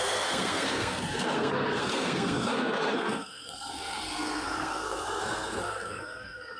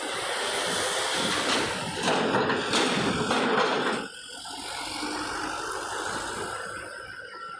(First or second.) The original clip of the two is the second